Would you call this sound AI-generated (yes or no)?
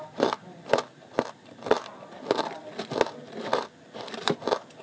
no